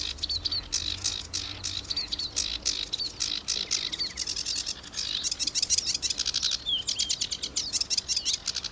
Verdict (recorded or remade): recorded